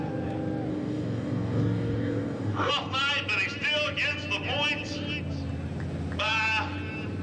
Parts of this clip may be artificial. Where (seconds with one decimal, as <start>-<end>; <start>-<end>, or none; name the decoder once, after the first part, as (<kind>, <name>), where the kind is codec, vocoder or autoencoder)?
0.7-2.7 (codec, DAC)